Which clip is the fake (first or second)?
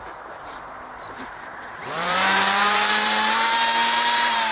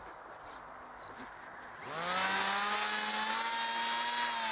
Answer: first